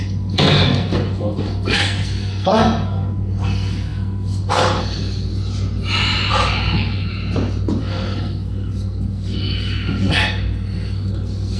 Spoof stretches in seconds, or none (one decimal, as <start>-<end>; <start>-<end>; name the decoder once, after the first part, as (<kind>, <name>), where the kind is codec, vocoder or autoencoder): 0.0-5.3 (codec, SNAC); 6.3-7.1; 7.8-11.6